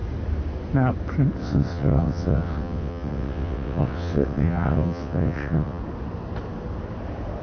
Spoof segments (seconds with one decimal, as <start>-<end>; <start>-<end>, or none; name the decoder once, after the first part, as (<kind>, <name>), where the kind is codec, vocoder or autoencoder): 1.4-5.8 (vocoder, WaveNeXt)